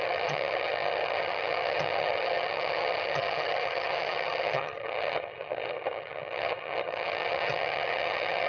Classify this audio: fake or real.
fake